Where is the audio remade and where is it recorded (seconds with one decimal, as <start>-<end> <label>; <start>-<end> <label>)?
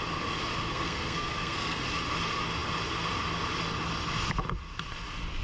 0.0-0.7 recorded; 0.7-1.8 remade; 1.8-5.4 recorded